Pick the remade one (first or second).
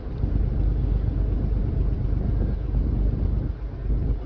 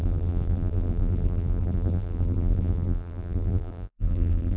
second